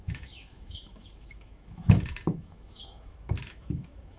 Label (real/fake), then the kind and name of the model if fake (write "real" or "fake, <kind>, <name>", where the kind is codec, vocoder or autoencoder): fake, autoencoder, DAC-VAE